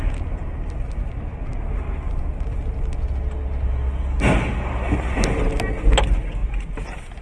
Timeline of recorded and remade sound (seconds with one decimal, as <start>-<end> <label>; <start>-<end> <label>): 0.0-7.2 recorded